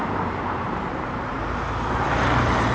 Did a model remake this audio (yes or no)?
yes